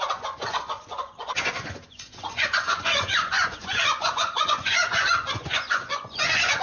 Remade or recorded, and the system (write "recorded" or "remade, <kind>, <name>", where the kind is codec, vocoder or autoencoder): remade, vocoder, Vocos